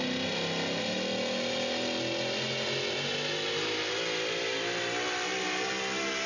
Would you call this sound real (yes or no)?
yes